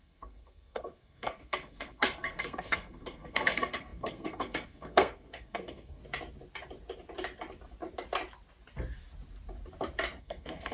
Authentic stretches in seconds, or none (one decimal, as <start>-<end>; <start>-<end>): 6.0-10.2